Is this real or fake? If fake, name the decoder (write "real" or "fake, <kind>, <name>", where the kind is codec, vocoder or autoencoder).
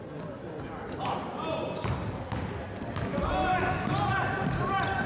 real